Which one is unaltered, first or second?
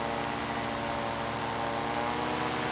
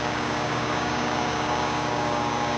first